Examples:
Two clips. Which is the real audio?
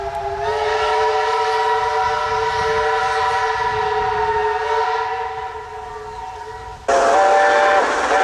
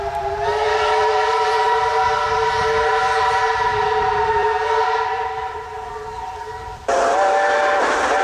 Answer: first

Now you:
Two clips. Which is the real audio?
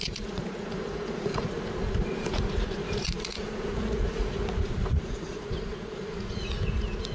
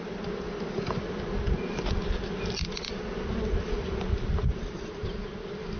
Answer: second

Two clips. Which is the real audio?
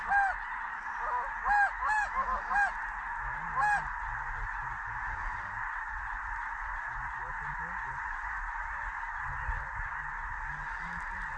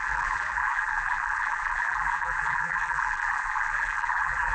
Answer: first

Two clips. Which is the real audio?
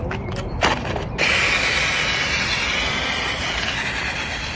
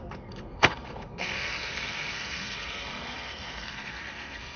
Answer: first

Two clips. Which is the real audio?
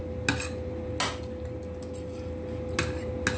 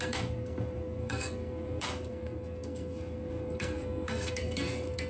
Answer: first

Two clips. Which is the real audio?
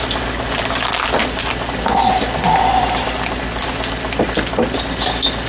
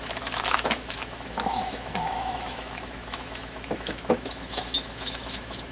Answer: first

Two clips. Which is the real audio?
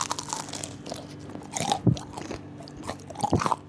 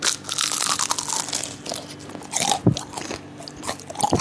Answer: second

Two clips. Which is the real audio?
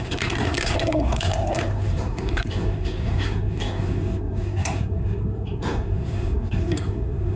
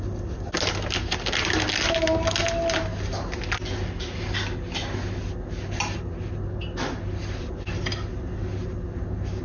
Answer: second